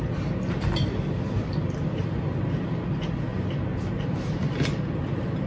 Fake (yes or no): no